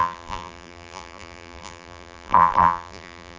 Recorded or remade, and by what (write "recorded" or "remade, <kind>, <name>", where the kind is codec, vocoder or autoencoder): remade, vocoder, BigVGAN v2